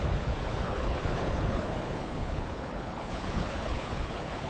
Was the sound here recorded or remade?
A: remade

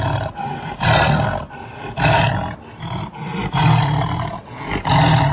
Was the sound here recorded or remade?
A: recorded